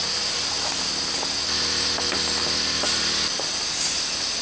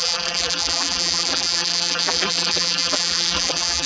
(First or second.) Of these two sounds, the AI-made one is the second